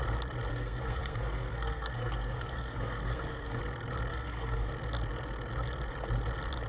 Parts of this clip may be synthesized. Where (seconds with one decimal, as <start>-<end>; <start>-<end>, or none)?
0.5-3.6; 4.1-4.7